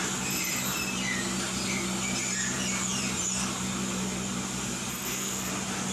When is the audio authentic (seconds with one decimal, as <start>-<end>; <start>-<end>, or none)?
0.0-4.9; 5.5-5.9